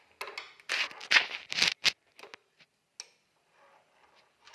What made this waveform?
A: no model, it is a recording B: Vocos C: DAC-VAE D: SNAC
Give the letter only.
A